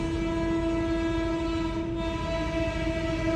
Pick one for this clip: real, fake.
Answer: real